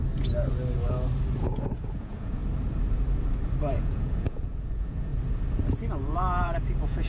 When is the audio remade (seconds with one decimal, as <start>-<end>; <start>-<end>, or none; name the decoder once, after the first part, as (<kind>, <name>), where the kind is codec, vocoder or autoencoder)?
1.4-2.4 (vocoder, Vocos); 3.7-5.1; 6.0-7.1